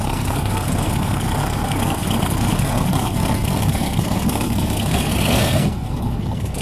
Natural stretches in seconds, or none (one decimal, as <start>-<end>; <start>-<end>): none